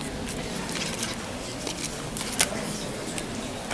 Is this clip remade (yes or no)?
no